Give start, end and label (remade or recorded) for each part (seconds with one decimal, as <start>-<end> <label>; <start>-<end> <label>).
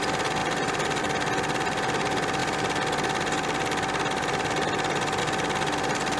0.0-6.2 recorded